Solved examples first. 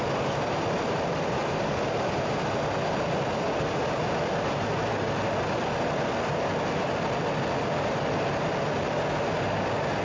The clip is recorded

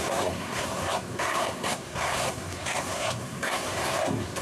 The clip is remade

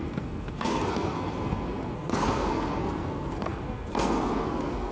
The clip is remade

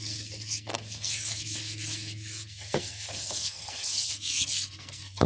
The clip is remade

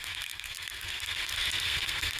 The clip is remade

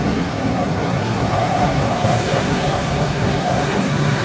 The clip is remade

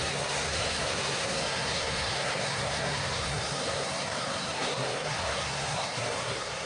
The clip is remade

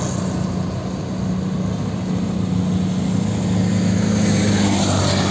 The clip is recorded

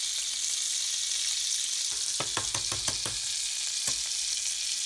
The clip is recorded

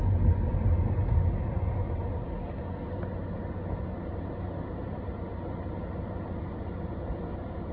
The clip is recorded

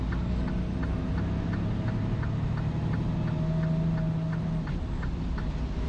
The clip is recorded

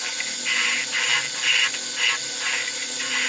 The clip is recorded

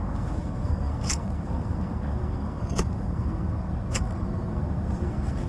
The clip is remade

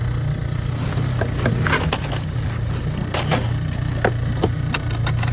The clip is recorded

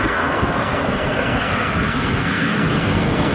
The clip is remade